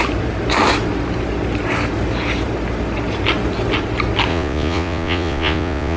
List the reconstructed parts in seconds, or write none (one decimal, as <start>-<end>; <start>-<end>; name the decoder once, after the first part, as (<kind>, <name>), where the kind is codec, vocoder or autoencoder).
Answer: 4.3-6.0 (vocoder, Vocos)